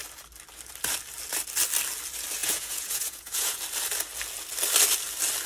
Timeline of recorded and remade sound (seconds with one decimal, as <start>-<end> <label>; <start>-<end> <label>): 0.0-2.4 recorded; 2.4-3.6 remade; 3.6-5.5 recorded